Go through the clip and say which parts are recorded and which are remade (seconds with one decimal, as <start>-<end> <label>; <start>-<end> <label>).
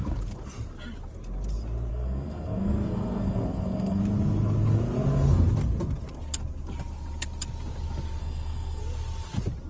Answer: 0.0-1.9 recorded; 1.9-4.0 remade; 4.0-8.2 recorded; 8.2-8.8 remade; 8.8-9.7 recorded